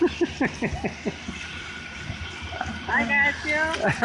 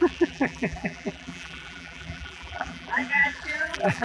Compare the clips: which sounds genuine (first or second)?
first